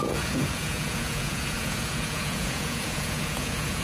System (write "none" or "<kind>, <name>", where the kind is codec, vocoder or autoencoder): vocoder, Vocos